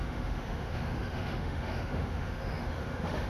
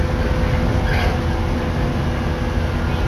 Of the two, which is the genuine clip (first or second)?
second